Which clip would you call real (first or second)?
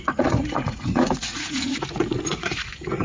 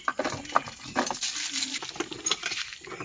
second